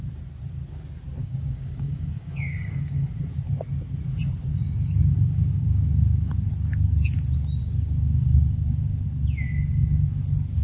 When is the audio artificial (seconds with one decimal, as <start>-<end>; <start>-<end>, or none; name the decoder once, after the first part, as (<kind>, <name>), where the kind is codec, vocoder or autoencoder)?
1.2-3.1 (codec, DAC); 4.5-6.5; 7.6-9.0